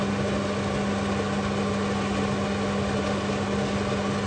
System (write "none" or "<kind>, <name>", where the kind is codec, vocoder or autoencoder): none